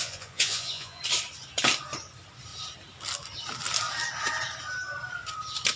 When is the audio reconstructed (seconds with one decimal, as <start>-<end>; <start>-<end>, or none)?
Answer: 0.0-1.0